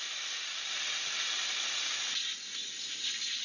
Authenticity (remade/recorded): recorded